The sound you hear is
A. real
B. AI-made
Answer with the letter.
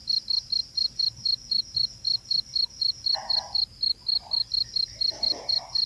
A